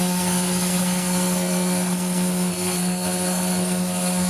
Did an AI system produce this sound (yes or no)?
yes